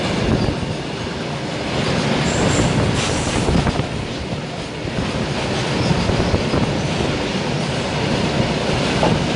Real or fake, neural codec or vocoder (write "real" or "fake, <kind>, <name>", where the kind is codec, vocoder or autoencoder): real